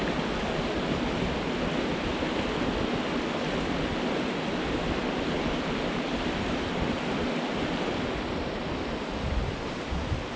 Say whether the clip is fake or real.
real